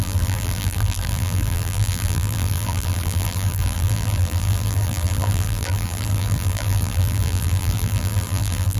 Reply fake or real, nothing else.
fake